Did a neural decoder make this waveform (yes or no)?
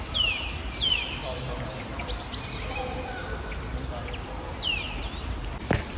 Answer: no